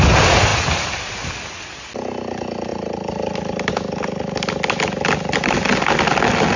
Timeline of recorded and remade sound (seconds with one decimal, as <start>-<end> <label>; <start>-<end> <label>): 0.0-2.7 recorded; 2.7-3.7 remade; 3.7-6.6 recorded